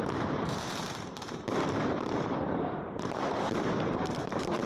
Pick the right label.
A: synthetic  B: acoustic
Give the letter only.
A